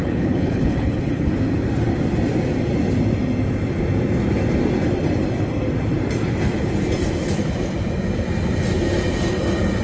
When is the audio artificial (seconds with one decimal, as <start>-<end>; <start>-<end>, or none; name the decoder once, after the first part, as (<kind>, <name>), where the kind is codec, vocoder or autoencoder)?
0.0-1.3 (codec, HILCodec)